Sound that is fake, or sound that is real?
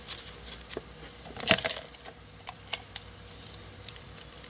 fake